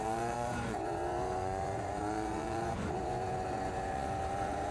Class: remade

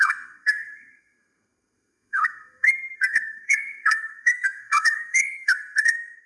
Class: remade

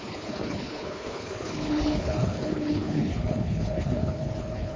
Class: remade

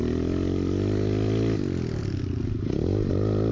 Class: recorded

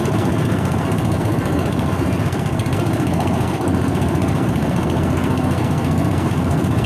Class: remade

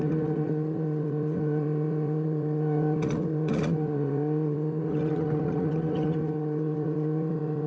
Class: remade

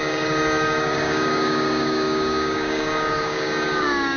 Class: remade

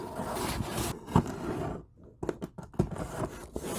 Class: recorded